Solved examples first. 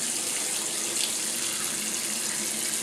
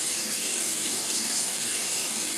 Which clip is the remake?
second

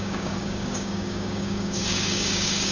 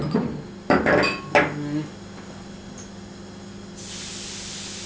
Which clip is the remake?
first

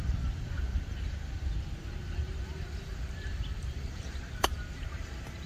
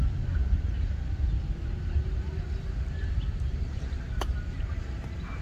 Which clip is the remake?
first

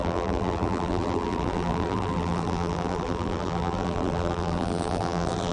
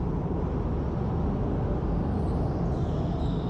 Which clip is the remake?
first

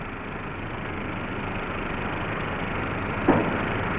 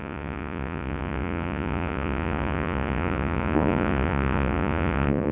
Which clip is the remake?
second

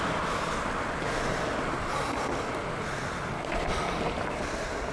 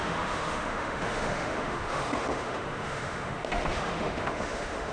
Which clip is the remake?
second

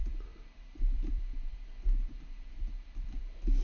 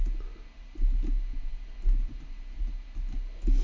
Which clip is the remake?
first